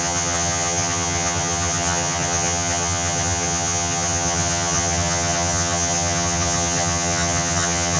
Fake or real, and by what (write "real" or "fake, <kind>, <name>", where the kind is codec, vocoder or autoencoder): fake, vocoder, HiFi-GAN